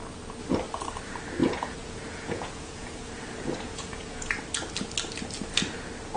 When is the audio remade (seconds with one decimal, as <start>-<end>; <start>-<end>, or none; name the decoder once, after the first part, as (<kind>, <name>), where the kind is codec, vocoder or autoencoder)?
1.4-4.3 (vocoder, Vocos)